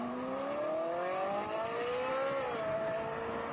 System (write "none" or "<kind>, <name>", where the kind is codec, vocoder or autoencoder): none